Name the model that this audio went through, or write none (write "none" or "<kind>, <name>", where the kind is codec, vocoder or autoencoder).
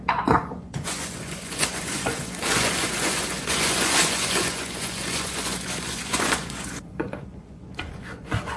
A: vocoder, Vocos